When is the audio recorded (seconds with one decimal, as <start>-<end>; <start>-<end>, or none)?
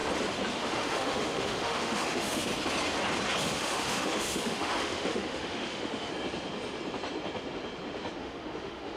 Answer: 0.0-0.5; 2.5-3.4; 6.1-8.2